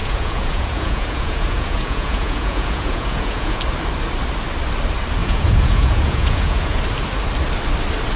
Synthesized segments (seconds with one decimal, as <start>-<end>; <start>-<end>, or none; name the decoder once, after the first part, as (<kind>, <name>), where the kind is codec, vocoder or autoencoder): 0.0-3.6 (vocoder, Vocos); 5.2-6.8